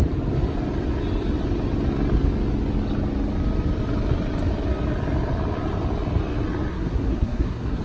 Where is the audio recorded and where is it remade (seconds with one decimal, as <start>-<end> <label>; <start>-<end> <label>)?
0.0-6.7 recorded; 6.7-7.8 remade